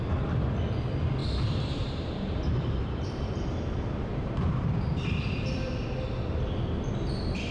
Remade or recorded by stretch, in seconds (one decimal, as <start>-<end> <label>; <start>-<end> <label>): 0.0-1.2 recorded; 1.2-3.3 remade; 3.3-4.1 recorded; 4.1-4.6 remade; 4.6-7.5 recorded